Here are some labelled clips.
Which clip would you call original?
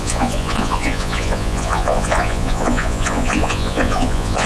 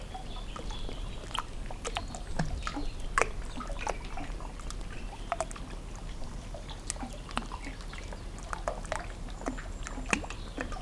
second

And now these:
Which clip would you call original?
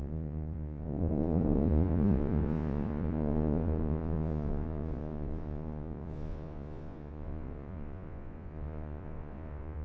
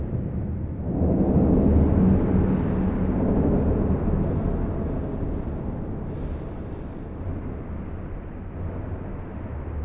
second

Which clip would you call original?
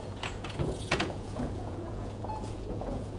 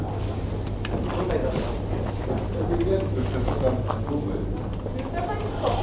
second